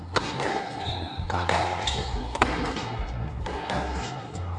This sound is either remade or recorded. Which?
remade